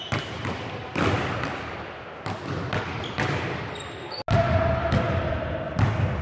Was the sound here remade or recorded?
recorded